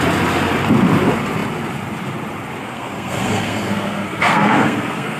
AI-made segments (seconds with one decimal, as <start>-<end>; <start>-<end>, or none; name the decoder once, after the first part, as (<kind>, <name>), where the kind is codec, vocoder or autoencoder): 2.6-5.2 (codec, SNAC)